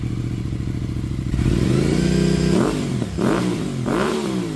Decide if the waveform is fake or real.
real